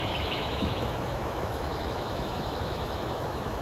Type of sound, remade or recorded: remade